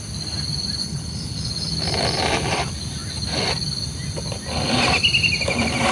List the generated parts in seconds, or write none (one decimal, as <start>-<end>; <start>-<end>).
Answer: 0.8-1.5